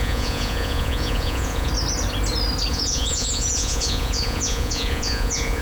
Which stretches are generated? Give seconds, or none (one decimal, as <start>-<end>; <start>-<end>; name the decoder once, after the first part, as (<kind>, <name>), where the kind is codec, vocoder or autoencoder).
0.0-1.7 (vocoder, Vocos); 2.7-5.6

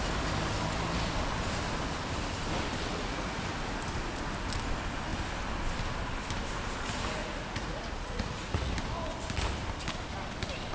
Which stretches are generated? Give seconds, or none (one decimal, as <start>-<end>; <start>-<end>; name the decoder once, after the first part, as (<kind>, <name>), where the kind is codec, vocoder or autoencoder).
2.9-3.5 (vocoder, Vocos); 7.2-8.7

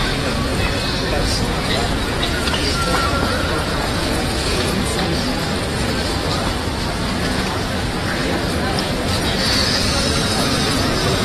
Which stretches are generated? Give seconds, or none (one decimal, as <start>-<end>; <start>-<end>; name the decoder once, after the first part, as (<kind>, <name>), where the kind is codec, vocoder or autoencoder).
0.0-0.5 (vocoder, Vocos); 1.1-4.9; 7.2-8.2; 8.9-11.2

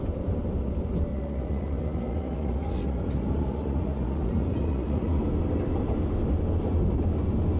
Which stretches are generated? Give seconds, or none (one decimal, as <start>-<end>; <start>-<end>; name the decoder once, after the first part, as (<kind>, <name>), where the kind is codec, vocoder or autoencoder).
1.1-5.2 (vocoder, Vocos)

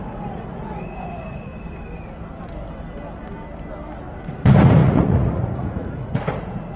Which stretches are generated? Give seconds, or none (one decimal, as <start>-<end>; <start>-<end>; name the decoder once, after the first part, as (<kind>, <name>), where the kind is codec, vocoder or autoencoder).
0.0-1.5 (vocoder, Vocos); 4.3-6.8

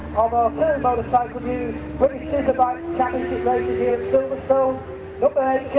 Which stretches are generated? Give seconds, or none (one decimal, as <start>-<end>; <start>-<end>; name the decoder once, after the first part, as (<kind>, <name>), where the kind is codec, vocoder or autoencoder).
none